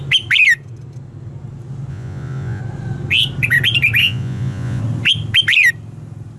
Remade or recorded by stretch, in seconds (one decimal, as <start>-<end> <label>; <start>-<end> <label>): 0.0-1.9 recorded; 1.9-2.6 remade; 2.6-4.0 recorded; 4.0-4.8 remade; 4.8-6.4 recorded